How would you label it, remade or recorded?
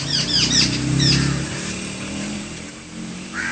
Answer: remade